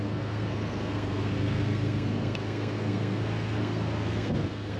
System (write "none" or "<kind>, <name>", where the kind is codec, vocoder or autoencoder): codec, SNAC